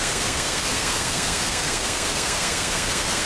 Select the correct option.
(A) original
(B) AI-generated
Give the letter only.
B